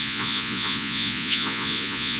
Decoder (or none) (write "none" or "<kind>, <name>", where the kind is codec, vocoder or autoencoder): vocoder, Vocos